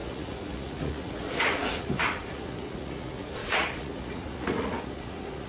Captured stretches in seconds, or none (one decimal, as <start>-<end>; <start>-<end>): none